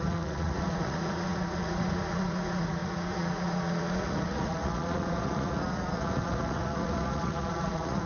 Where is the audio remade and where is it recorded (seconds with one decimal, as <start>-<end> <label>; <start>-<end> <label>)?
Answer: 0.0-8.1 remade